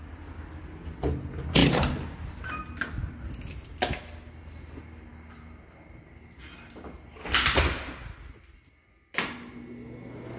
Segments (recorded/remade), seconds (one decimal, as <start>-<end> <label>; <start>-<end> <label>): 0.0-10.4 recorded